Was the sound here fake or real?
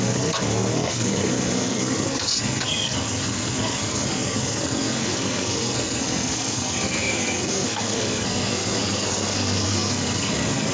fake